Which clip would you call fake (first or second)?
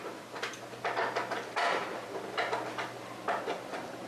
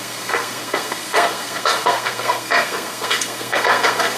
second